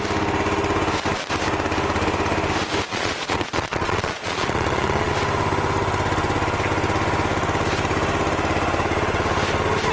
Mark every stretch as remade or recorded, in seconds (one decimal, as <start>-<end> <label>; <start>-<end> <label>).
0.0-2.9 recorded; 2.9-5.1 remade; 5.1-9.9 recorded